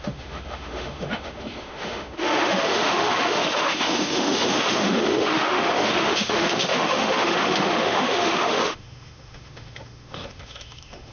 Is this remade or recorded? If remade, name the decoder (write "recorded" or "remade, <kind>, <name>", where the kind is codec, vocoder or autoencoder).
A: remade, autoencoder, DAC-VAE